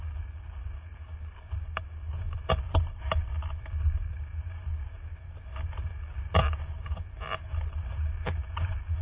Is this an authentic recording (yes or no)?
yes